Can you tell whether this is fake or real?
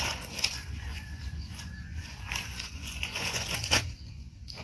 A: fake